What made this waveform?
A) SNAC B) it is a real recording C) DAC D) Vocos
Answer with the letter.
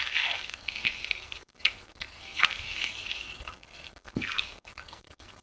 A